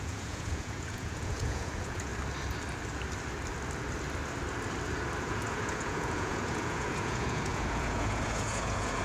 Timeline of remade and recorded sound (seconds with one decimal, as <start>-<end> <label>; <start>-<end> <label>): 0.0-2.1 remade; 2.1-5.2 recorded; 5.2-9.0 remade